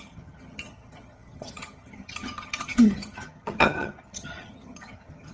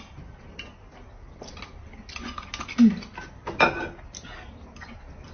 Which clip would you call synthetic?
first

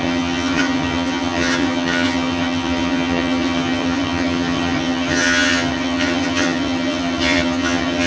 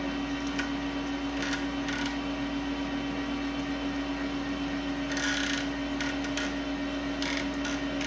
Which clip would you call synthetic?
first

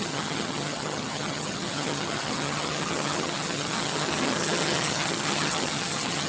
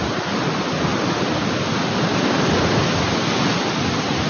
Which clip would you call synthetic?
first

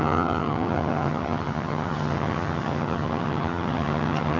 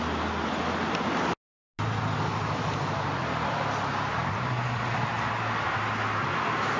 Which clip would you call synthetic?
first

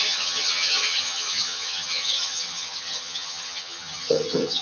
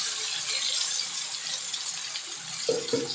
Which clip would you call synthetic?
first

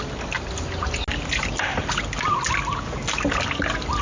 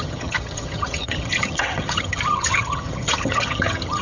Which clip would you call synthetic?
second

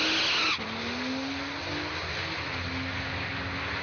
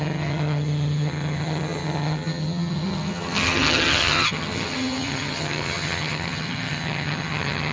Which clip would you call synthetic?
second